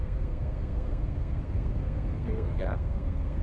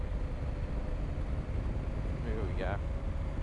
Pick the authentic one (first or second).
second